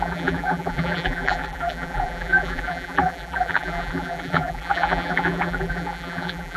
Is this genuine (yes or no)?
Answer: no